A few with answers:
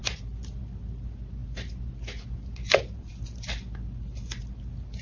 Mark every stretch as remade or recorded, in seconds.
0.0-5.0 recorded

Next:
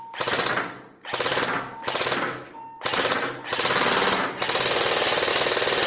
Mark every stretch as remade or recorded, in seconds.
0.0-5.9 recorded